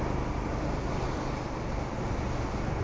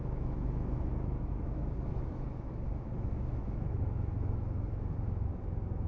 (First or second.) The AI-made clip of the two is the second